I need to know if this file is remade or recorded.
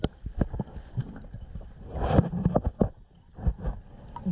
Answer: recorded